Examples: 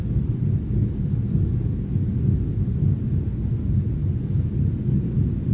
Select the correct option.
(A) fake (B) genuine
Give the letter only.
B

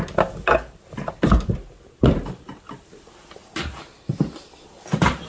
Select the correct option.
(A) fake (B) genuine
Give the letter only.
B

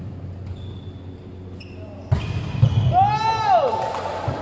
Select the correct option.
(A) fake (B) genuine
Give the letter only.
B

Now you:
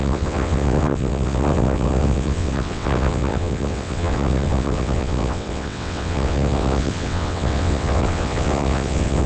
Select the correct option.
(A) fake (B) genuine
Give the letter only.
A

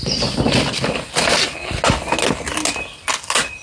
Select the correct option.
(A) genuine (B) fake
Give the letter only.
A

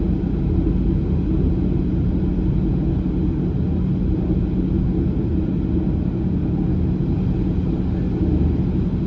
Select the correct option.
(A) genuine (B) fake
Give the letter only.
A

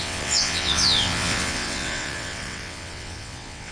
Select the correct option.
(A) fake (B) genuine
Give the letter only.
A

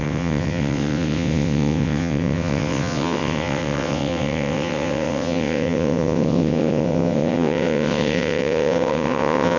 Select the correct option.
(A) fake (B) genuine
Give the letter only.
A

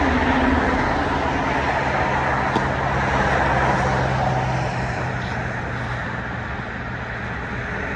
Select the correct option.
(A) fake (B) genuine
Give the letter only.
B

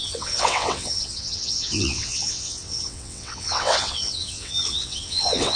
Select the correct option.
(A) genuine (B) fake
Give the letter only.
B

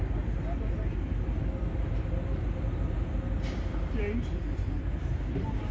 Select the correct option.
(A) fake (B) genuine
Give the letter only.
B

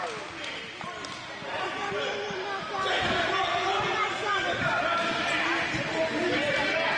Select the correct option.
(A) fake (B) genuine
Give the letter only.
B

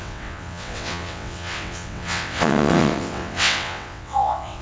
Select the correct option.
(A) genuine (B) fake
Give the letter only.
B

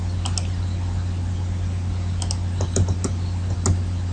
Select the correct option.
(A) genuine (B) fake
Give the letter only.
A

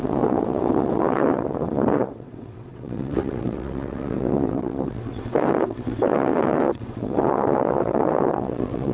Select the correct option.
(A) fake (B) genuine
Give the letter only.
A